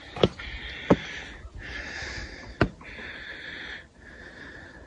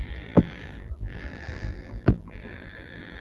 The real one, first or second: first